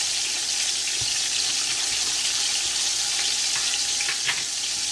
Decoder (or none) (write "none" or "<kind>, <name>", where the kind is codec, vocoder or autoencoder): none